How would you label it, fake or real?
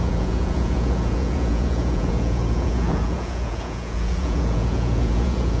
fake